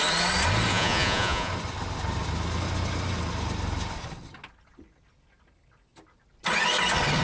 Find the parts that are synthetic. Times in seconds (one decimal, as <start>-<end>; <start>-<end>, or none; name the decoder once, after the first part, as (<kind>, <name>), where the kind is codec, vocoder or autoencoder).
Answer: 0.7-1.5 (vocoder, Vocos)